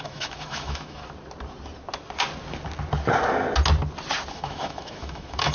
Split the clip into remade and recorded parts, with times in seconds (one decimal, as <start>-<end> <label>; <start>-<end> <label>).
0.0-1.0 remade; 1.0-4.3 recorded; 4.3-5.5 remade